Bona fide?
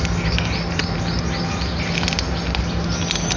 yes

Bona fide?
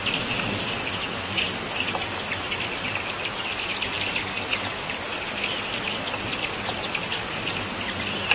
yes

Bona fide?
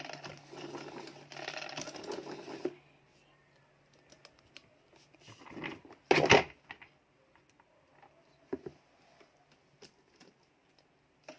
yes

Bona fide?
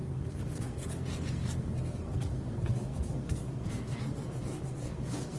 no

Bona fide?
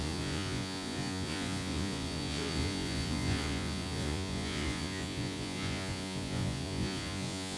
no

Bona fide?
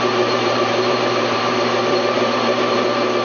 no